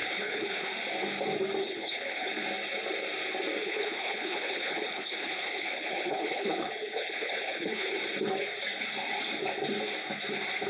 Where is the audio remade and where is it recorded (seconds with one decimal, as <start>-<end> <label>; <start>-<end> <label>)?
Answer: 0.0-0.7 remade; 0.7-1.6 recorded; 1.6-2.3 remade; 2.3-3.6 recorded; 3.6-7.9 remade; 7.9-10.7 recorded

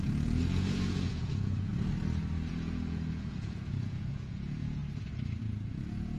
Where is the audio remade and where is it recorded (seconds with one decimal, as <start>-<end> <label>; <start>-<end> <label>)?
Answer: 0.0-1.7 remade; 1.7-2.5 recorded; 2.5-4.8 remade; 4.8-5.4 recorded; 5.4-6.2 remade

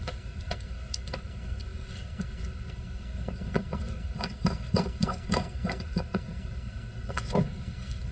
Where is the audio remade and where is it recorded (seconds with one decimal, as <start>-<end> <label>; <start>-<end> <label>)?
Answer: 0.0-8.1 remade